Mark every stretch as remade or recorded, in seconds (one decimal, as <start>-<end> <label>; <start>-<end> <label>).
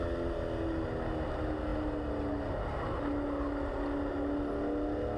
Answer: 0.0-5.2 recorded